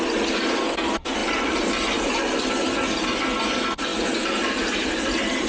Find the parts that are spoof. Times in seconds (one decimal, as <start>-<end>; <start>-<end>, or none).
1.2-2.5; 3.9-5.5